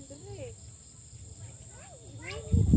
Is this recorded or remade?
recorded